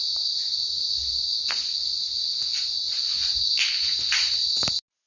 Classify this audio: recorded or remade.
recorded